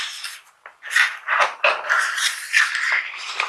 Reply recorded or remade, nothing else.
recorded